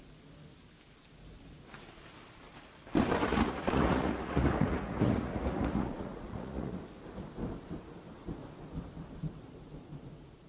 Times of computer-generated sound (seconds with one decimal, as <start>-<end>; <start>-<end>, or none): 3.3-6.8